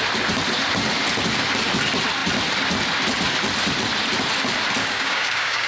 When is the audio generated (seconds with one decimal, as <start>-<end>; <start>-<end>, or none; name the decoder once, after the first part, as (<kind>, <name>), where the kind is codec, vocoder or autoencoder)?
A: 4.8-5.7 (codec, DAC)